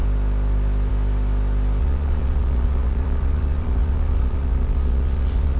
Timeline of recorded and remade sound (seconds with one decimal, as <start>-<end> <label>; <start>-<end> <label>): 0.0-1.8 recorded; 1.8-5.6 remade